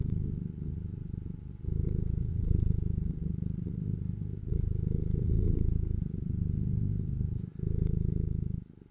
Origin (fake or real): fake